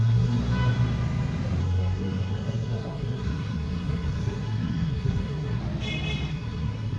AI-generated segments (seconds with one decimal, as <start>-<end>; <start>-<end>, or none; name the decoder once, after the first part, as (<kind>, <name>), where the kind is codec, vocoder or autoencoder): 0.0-0.4 (codec, SNAC); 1.6-5.6; 6.3-7.0